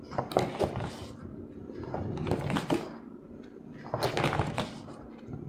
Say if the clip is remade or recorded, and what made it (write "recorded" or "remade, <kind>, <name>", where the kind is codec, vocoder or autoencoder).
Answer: recorded